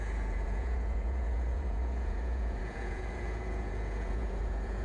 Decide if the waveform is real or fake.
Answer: fake